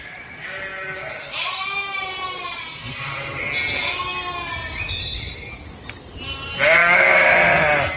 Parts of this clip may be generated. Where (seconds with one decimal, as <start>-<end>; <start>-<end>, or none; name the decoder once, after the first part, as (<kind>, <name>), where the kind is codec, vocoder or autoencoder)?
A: 6.8-7.3 (codec, DAC)